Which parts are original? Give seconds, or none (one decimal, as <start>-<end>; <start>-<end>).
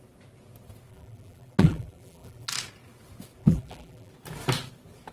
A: 0.0-0.9; 2.5-3.4; 4.1-5.1